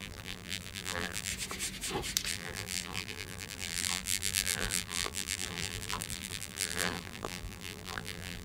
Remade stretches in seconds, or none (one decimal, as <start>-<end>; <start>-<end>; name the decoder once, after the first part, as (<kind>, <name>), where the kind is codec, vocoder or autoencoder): 0.0-1.3 (vocoder, BigVGAN v2); 2.3-8.4